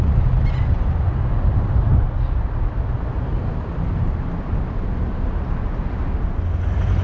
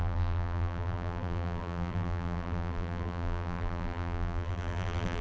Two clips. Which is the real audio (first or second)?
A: first